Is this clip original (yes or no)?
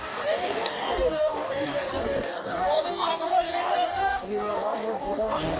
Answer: no